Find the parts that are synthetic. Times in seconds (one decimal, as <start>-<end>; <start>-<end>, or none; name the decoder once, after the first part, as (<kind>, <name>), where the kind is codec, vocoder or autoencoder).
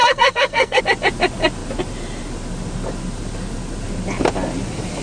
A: 0.0-0.8 (codec, SNAC)